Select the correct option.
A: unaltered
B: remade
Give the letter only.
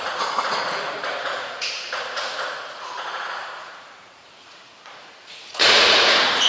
B